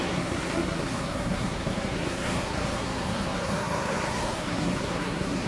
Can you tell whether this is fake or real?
fake